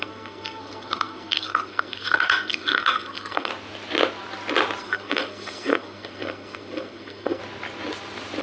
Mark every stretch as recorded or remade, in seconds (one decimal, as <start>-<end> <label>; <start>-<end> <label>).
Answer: 0.0-3.5 remade; 3.5-4.8 recorded; 4.8-7.4 remade; 7.4-8.4 recorded